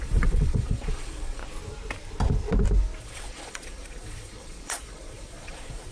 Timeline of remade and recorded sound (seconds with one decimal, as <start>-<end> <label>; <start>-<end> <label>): 0.0-1.4 remade; 1.4-3.0 recorded; 3.0-5.9 remade